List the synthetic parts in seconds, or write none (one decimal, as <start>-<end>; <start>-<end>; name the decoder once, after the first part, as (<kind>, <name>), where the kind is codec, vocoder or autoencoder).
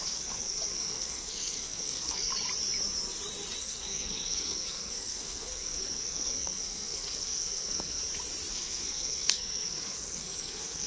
0.0-2.3 (codec, SNAC); 3.6-8.0; 8.5-10.9